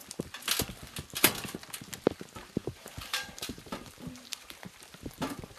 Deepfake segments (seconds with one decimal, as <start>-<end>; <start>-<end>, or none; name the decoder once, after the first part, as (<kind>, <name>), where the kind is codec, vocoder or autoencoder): 2.2-5.6 (vocoder, BigVGAN v2)